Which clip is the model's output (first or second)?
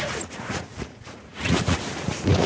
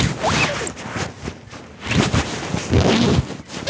first